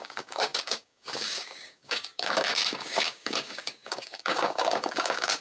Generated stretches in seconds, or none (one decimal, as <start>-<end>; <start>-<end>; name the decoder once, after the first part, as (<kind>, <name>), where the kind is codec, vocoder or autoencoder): 0.0-5.4 (codec, DAC)